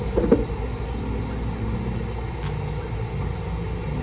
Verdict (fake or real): real